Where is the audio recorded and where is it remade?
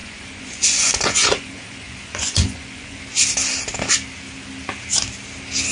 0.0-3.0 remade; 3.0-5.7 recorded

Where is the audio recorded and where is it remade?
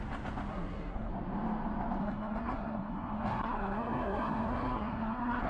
0.0-0.5 recorded; 0.5-1.1 remade; 1.1-2.0 recorded; 2.0-5.5 remade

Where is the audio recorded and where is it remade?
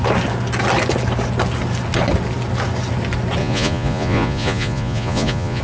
0.0-3.4 recorded; 3.4-5.6 remade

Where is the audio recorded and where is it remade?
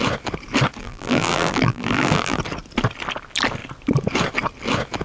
0.0-0.8 recorded; 0.8-2.4 remade; 2.4-5.0 recorded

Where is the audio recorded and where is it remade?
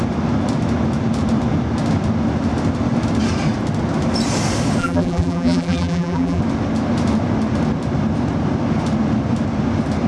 0.0-4.8 recorded; 4.8-6.4 remade; 6.4-10.1 recorded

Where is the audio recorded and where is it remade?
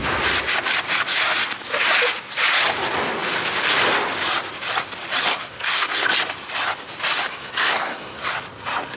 0.0-5.3 recorded; 5.3-6.1 remade; 6.1-7.3 recorded; 7.3-8.3 remade; 8.3-9.0 recorded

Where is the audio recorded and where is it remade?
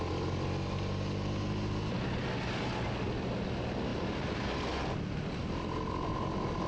0.0-3.9 recorded; 3.9-4.5 remade; 4.5-6.7 recorded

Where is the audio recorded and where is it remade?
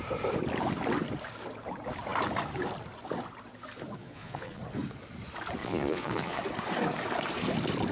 0.0-4.0 recorded; 4.0-4.6 remade; 4.6-5.6 recorded; 5.6-6.4 remade; 6.4-7.9 recorded